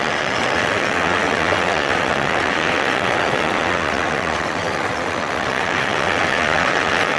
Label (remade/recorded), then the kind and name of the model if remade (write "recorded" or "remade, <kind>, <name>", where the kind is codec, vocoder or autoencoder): remade, vocoder, WaveNeXt